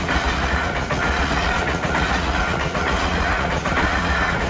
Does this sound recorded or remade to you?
remade